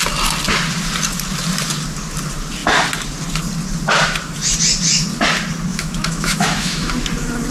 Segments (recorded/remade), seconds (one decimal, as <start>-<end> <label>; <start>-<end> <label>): 0.0-5.7 recorded; 5.7-6.9 remade; 6.9-7.5 recorded